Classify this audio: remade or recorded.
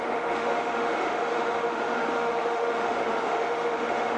remade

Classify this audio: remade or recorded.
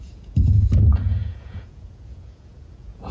remade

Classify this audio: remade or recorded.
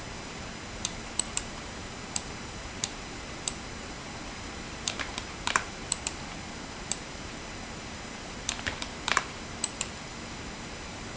remade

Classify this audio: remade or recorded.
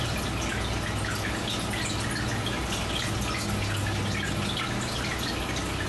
recorded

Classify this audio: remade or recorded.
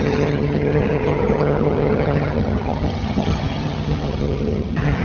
remade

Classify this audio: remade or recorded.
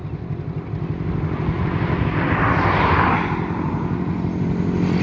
recorded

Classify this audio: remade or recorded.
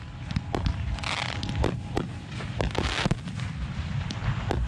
recorded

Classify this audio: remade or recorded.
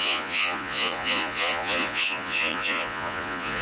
remade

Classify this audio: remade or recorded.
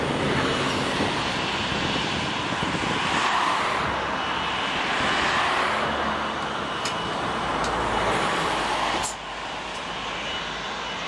recorded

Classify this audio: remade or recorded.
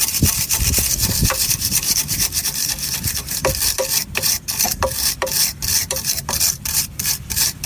remade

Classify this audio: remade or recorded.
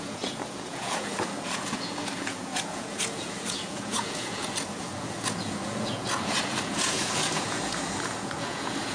remade